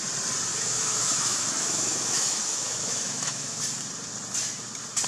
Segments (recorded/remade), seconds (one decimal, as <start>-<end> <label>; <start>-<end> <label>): 0.0-0.5 recorded; 0.5-3.6 remade; 3.6-5.1 recorded